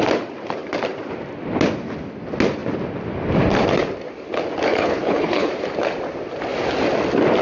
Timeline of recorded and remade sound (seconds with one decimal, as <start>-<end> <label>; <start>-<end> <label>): 0.0-4.7 recorded; 4.7-5.5 remade; 5.5-7.4 recorded